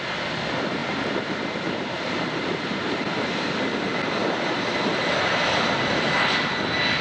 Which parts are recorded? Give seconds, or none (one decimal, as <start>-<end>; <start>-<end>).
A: 0.0-0.8; 3.5-7.0